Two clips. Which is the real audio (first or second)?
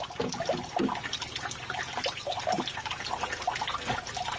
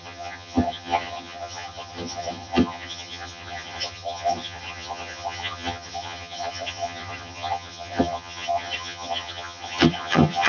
first